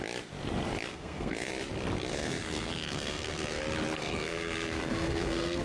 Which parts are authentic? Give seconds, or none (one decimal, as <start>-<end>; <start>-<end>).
0.0-0.9; 1.5-2.1; 3.6-4.0